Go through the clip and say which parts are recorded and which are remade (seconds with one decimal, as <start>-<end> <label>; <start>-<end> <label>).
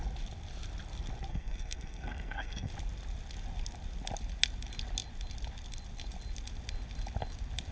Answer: 0.0-1.3 recorded; 1.3-2.7 remade; 2.7-7.7 recorded